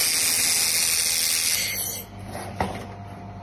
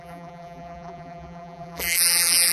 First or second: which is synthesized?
second